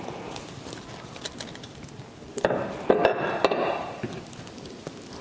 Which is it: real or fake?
real